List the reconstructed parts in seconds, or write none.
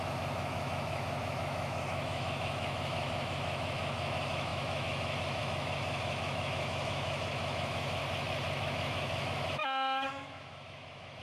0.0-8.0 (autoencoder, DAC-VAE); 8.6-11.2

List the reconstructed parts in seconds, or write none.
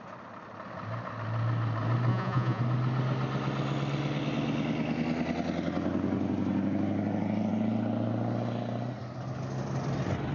2.1-2.6 (vocoder, Vocos)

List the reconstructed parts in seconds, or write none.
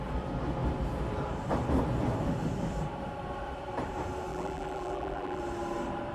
4.3-5.4 (vocoder, BigVGAN v2)